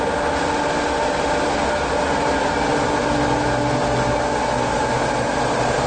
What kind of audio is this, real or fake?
real